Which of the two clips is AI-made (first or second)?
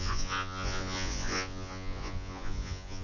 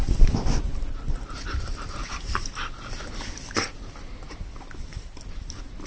first